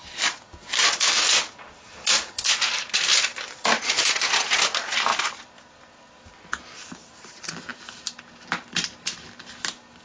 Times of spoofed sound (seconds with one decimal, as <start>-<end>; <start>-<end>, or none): none